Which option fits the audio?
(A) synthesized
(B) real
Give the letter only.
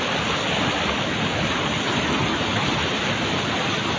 B